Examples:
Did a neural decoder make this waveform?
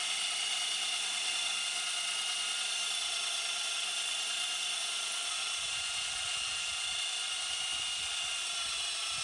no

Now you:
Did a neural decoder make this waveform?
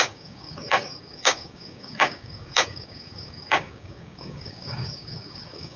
yes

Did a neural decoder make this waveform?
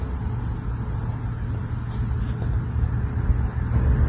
no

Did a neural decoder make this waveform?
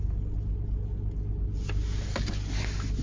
no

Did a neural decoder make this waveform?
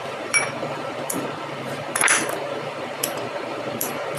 yes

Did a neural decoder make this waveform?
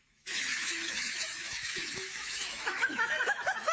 yes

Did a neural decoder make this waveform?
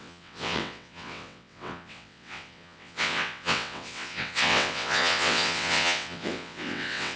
yes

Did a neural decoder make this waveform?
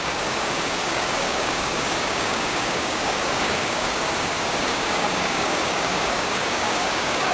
yes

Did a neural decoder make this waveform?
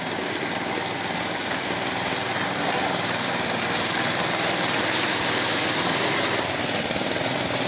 no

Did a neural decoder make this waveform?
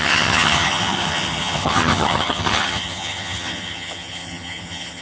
yes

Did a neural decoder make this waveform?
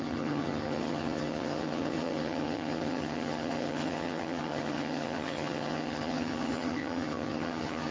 yes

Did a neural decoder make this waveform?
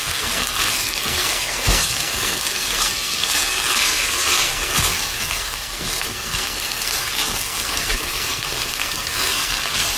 yes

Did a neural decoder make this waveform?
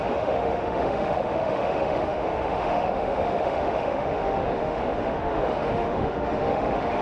yes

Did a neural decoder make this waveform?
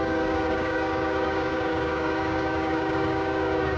yes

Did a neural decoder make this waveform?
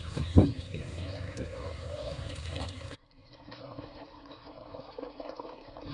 yes